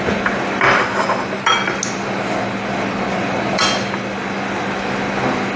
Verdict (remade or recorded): recorded